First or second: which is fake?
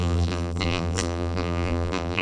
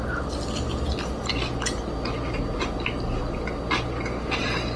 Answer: first